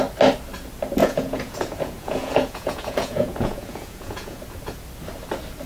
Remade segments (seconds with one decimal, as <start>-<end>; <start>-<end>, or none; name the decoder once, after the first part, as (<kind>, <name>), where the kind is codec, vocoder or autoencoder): 1.0-4.4 (vocoder, Vocos)